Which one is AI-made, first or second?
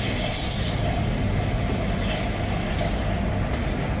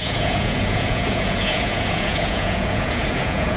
second